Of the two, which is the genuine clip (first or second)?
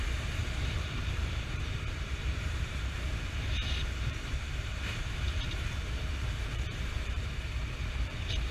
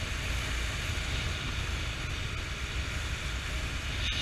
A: second